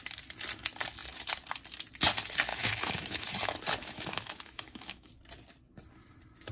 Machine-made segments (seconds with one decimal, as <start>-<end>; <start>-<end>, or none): 2.5-3.3; 3.8-5.1

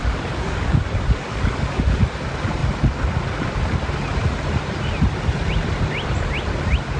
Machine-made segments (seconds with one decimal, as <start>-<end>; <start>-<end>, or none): 0.0-2.0

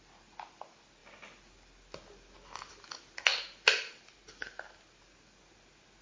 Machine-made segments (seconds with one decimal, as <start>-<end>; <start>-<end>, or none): none

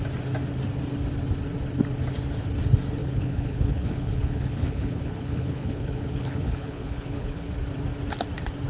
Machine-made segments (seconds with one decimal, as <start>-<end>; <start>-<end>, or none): 3.0-7.5

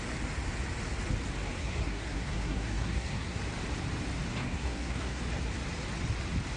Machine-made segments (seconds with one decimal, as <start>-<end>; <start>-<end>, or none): 1.6-3.4; 4.4-5.2